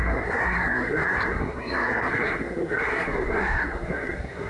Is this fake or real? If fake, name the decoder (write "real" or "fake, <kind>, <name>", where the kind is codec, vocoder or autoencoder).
fake, codec, SNAC